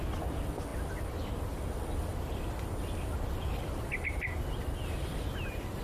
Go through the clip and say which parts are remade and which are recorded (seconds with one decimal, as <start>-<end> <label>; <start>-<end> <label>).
0.0-2.1 recorded; 2.1-5.8 remade